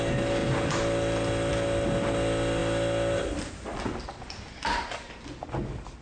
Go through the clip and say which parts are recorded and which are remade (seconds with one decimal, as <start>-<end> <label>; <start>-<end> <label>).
0.0-6.0 recorded